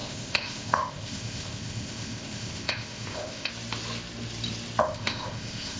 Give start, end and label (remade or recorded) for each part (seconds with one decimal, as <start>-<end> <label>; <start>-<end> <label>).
0.0-3.5 remade; 3.5-4.8 recorded; 4.8-5.8 remade